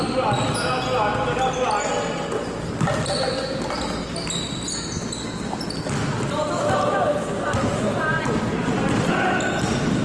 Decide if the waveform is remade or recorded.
recorded